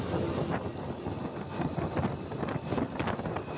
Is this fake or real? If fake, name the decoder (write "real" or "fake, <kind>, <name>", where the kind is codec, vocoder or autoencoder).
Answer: real